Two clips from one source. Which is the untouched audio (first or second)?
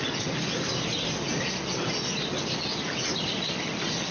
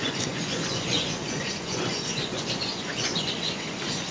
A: first